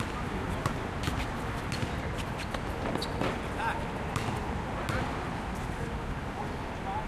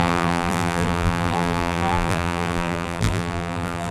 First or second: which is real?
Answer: first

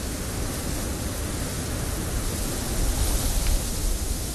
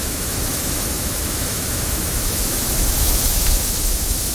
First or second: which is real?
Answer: first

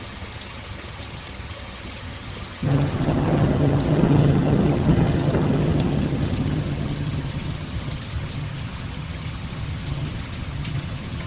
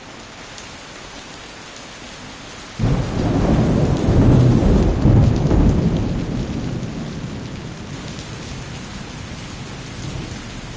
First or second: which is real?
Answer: second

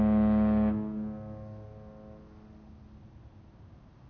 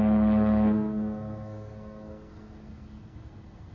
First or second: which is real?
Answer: first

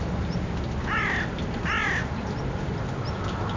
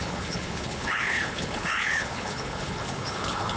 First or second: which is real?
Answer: first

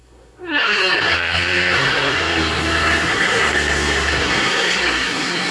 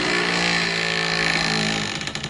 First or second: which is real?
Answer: second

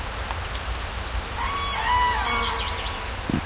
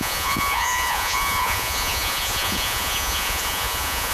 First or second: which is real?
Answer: first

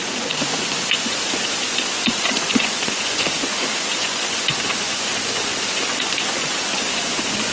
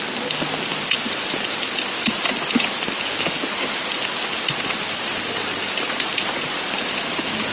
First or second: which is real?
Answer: second